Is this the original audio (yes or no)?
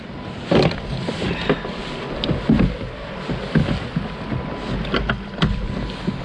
yes